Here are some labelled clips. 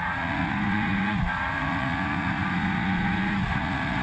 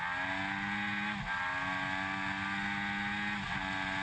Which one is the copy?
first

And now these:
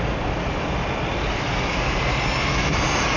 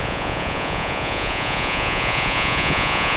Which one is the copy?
second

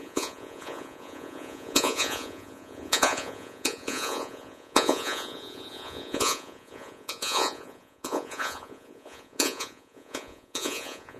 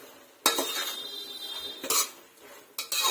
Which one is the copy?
first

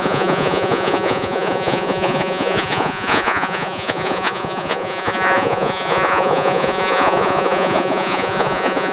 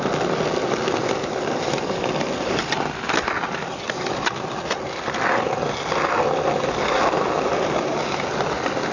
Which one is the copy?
first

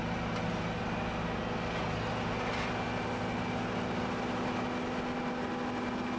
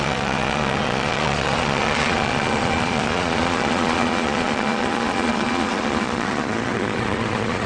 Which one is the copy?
second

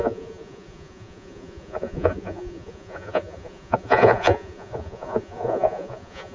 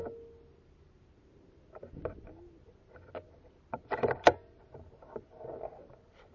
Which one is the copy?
first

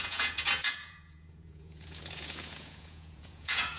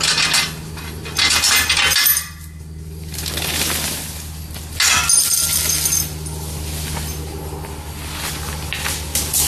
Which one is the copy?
first